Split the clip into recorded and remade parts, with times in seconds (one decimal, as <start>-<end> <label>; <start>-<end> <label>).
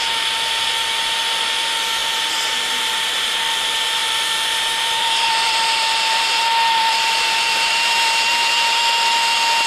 0.0-2.0 recorded; 2.0-3.4 remade; 3.4-4.0 recorded; 4.0-8.8 remade; 8.8-9.7 recorded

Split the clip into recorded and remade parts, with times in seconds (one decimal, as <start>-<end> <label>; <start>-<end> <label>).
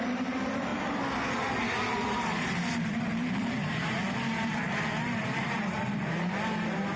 0.0-0.7 remade; 0.7-1.6 recorded; 1.6-7.0 remade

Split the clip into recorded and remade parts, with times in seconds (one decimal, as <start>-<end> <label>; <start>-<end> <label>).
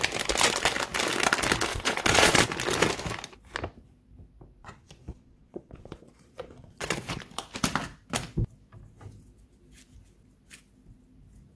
0.0-1.7 recorded; 1.7-2.4 remade; 2.4-4.6 recorded; 4.6-7.2 remade; 7.2-11.6 recorded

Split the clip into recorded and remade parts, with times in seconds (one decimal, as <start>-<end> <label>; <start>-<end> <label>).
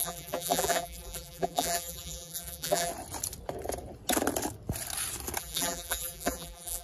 0.0-2.9 remade; 2.9-5.4 recorded; 5.4-6.8 remade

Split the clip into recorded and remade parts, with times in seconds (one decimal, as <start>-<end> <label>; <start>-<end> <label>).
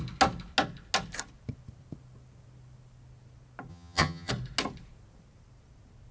0.0-3.7 recorded; 3.7-4.3 remade; 4.3-6.1 recorded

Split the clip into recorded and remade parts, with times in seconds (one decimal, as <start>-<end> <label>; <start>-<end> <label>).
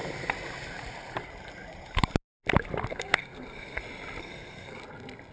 0.0-2.9 recorded; 2.9-3.8 remade; 3.8-4.2 recorded; 4.2-4.8 remade; 4.8-5.3 recorded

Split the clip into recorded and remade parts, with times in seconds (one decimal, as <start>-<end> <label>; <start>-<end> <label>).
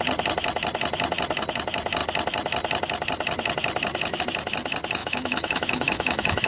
0.0-5.0 recorded; 5.0-6.5 remade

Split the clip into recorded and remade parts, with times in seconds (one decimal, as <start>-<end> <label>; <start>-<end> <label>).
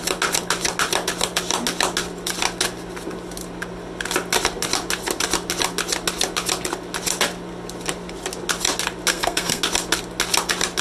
0.0-9.1 recorded; 9.1-9.6 remade; 9.6-10.8 recorded